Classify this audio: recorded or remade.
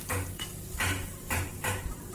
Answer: remade